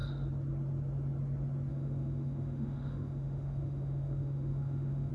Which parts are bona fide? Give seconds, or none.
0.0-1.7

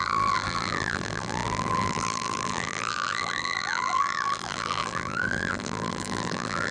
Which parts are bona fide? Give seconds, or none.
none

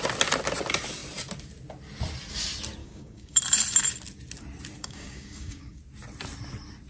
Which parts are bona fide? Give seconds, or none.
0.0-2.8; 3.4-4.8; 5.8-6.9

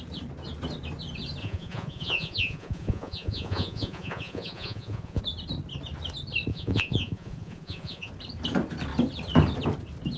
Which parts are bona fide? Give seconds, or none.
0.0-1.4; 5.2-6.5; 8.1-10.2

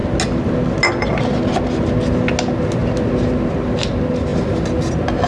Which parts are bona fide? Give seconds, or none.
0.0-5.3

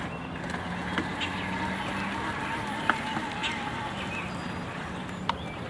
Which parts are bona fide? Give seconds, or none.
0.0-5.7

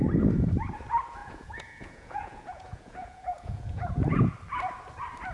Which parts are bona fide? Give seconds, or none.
0.0-1.2; 3.9-5.3